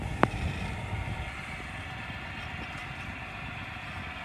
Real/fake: fake